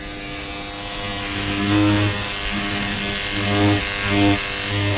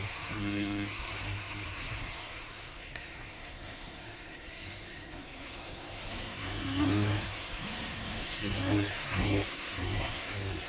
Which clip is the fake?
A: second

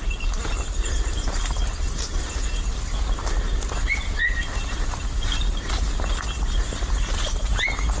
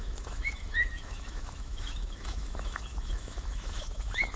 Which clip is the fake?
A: second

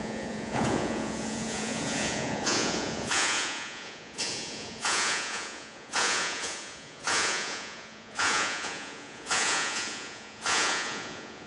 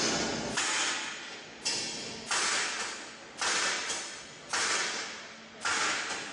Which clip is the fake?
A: first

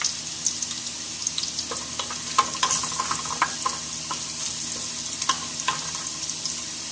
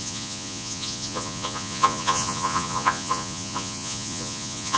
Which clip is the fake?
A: second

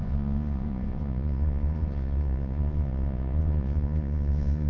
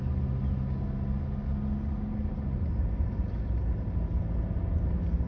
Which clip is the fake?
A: first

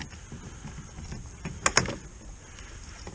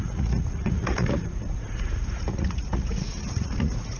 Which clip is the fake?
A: second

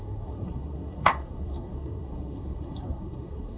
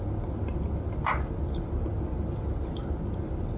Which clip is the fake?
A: first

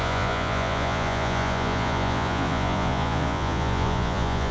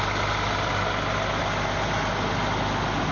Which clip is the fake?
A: first